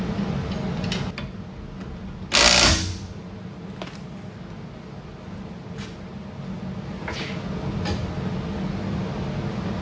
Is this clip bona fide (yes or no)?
yes